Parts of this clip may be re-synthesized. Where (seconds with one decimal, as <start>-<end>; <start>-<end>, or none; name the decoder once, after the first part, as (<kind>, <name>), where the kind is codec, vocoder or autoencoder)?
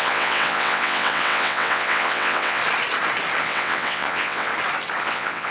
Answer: 0.0-2.6 (vocoder, WaveNeXt); 3.4-4.5; 5.0-5.5